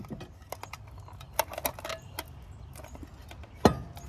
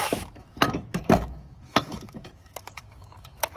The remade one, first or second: second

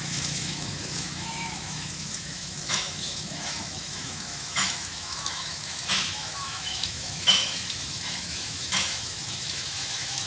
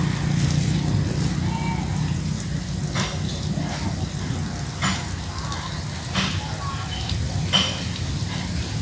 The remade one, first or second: first